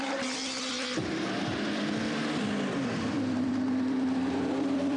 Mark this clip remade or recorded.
remade